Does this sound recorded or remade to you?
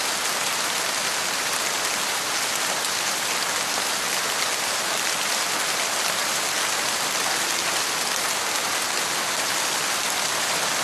recorded